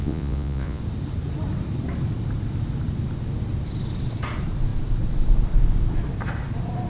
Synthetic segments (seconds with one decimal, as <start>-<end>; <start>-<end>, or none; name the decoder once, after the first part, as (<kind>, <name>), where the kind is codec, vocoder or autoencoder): 0.0-0.8 (vocoder, Vocos)